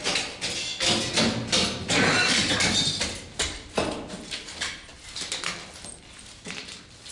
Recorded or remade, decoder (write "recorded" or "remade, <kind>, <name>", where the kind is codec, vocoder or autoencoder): recorded